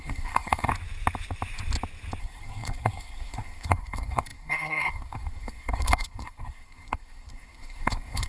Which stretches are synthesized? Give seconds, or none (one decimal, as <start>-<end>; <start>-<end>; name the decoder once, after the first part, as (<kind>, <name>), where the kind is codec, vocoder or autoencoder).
0.0-0.7 (codec, SNAC); 2.2-8.3